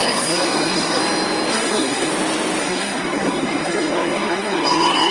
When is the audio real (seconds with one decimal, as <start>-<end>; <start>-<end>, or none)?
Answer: 1.0-1.5; 2.1-2.6